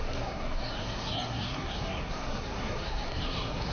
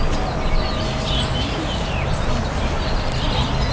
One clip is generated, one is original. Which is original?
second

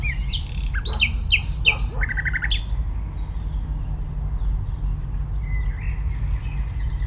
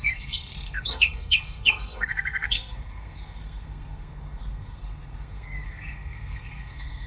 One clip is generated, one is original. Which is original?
first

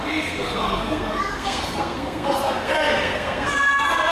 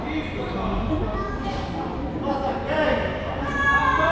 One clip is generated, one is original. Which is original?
second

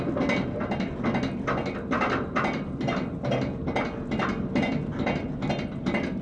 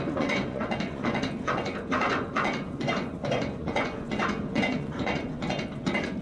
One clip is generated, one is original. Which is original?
first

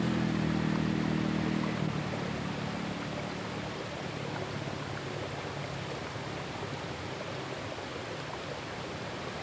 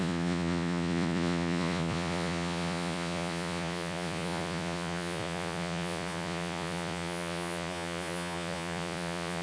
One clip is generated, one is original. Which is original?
first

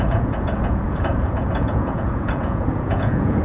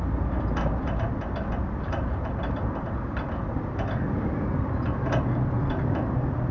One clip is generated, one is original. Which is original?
second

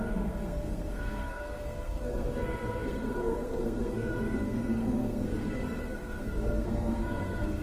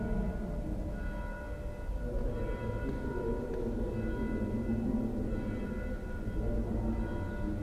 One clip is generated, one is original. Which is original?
second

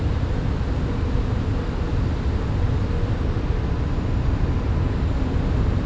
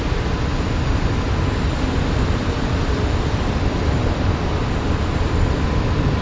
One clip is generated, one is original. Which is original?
first